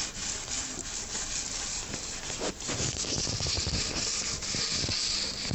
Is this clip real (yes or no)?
yes